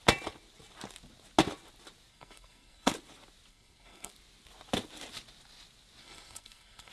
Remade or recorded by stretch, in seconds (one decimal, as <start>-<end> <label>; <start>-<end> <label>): 0.0-2.1 recorded; 2.1-2.9 remade; 2.9-3.5 recorded; 3.5-4.1 remade; 4.1-6.0 recorded; 6.0-6.9 remade